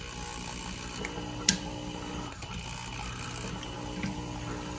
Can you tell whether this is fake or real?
real